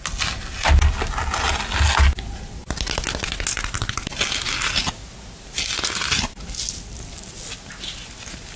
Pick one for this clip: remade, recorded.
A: recorded